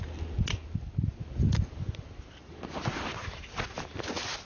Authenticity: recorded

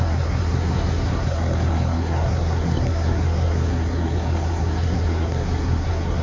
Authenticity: remade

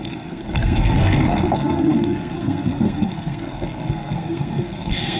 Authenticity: remade